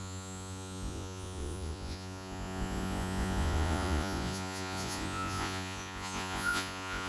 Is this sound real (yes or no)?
no